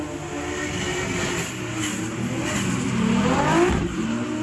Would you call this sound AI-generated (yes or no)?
no